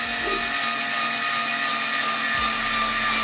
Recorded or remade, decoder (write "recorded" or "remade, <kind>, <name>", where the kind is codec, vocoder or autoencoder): recorded